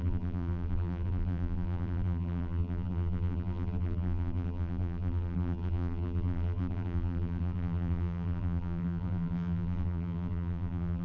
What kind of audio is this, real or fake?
fake